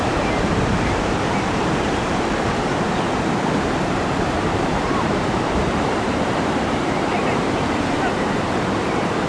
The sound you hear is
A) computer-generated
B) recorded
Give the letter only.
A